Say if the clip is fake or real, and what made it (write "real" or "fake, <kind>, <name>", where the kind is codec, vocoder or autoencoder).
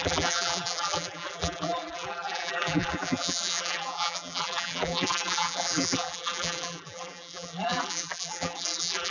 fake, vocoder, BigVGAN v2